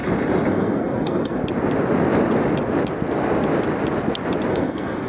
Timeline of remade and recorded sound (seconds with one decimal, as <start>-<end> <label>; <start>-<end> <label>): 0.0-0.5 recorded; 0.5-1.4 remade; 1.4-4.5 recorded; 4.5-5.1 remade